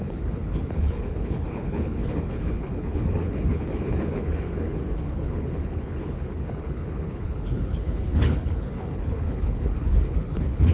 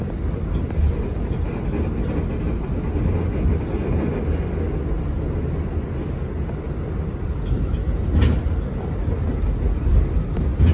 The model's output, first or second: first